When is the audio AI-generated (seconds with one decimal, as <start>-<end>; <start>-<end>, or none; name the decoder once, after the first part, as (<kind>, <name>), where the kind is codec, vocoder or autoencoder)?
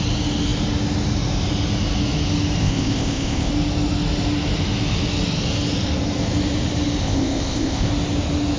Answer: 2.6-3.5 (codec, ZipCodec); 7.0-7.9